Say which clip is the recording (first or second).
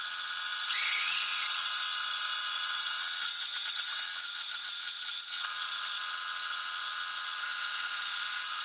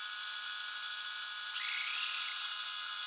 second